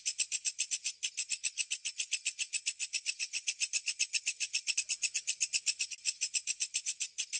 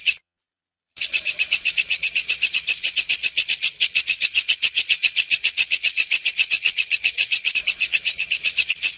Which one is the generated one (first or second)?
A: second